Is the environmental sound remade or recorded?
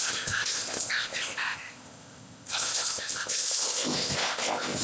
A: remade